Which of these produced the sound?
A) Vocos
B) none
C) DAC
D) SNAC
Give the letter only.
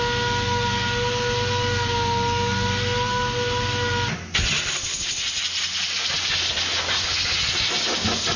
B